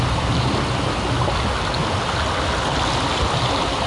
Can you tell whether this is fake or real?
real